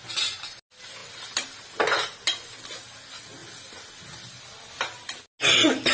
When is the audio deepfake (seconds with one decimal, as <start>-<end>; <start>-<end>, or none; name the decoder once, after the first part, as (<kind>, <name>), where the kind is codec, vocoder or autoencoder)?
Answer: none